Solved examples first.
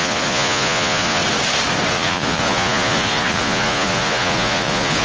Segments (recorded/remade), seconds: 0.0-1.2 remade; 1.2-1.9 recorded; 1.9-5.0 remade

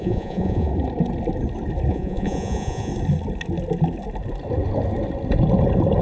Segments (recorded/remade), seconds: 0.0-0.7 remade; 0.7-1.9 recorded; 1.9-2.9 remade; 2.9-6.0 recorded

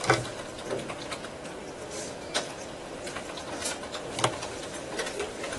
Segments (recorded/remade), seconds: 0.0-5.6 recorded

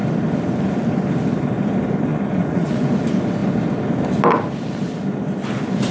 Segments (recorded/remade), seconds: 0.0-2.1 recorded; 2.1-2.9 remade; 2.9-5.9 recorded

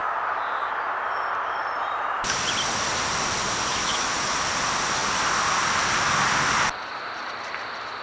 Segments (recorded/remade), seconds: 0.0-3.7 recorded; 3.7-4.4 remade; 4.4-8.0 recorded

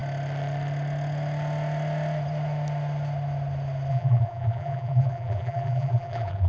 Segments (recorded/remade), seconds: 0.0-3.9 recorded; 3.9-6.5 remade